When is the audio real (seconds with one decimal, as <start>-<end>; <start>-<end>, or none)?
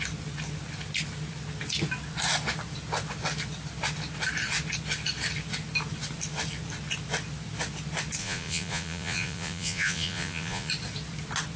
0.0-8.2; 10.7-11.6